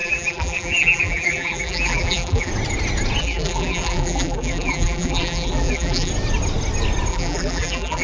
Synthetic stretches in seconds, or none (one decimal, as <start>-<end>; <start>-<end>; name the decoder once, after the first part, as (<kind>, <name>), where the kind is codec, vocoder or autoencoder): 0.0-2.5 (vocoder, BigVGAN v2); 3.2-6.1; 7.1-8.0